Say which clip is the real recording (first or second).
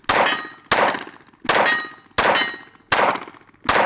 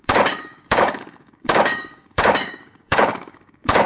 first